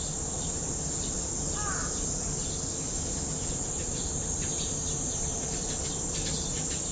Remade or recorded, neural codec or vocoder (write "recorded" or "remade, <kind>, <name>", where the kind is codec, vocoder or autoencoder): recorded